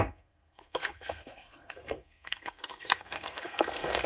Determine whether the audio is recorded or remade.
remade